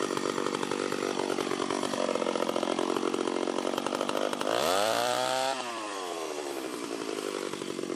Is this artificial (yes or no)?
yes